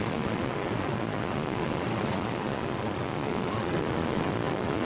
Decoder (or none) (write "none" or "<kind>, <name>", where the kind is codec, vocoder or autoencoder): vocoder, Vocos